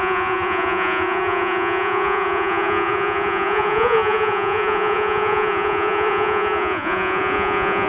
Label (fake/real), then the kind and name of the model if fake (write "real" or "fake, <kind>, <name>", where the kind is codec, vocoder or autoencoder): fake, vocoder, Vocos